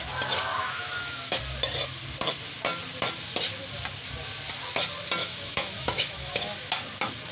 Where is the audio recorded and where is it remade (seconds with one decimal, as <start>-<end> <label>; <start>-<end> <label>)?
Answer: 0.0-0.5 recorded; 0.5-1.4 remade; 1.4-5.2 recorded; 5.2-6.7 remade; 6.7-7.3 recorded